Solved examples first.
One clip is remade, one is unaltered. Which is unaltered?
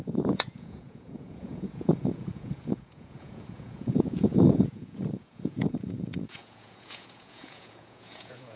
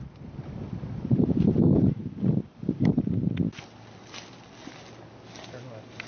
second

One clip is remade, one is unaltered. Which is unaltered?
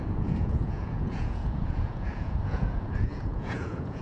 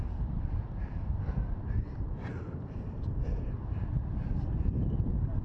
second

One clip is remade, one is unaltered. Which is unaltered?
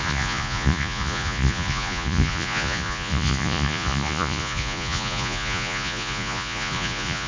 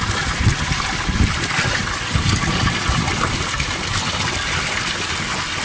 second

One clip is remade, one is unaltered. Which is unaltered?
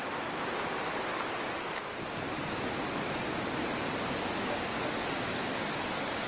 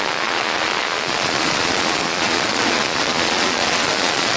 first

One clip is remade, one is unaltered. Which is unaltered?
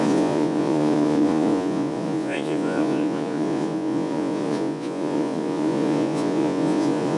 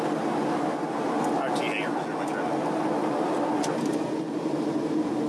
second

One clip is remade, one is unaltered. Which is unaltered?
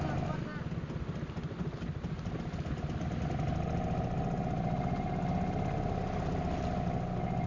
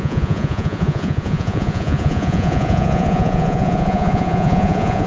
first